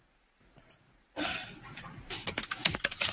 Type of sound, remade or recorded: recorded